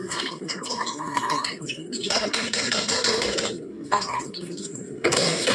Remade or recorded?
remade